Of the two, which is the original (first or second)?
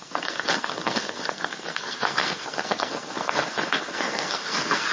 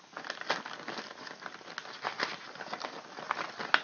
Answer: second